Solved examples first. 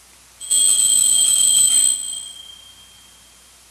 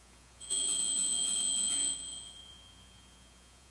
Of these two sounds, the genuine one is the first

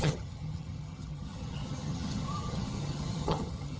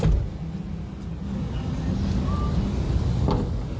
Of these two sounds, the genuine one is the second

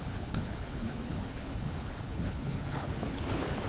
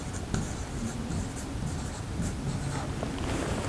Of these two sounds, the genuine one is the second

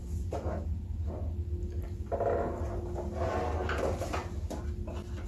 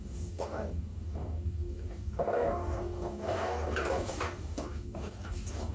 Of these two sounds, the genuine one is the first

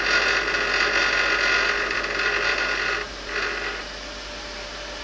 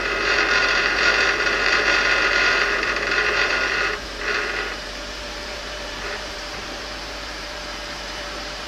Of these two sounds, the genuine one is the first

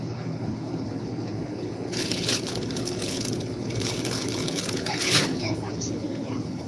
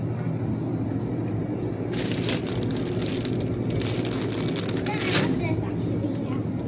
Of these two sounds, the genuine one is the second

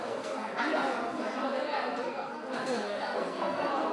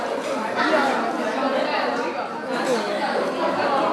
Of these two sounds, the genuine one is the second